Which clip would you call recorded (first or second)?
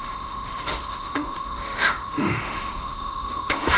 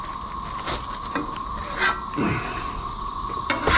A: second